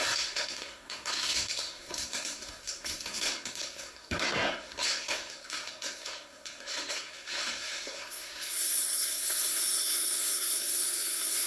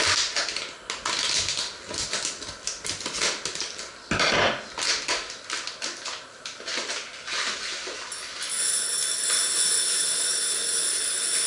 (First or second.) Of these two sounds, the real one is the second